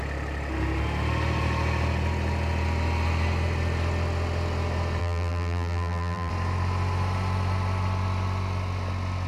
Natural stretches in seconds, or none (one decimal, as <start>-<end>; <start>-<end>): 0.0-5.0; 6.3-9.3